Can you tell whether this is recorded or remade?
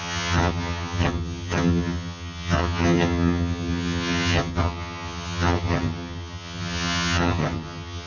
remade